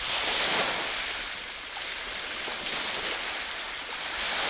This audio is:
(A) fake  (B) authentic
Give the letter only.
B